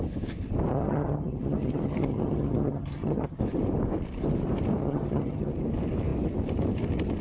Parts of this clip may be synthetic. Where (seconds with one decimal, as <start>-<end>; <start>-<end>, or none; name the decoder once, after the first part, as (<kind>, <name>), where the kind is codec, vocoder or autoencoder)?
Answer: 0.7-3.4 (vocoder, HiFi-GAN); 4.8-5.5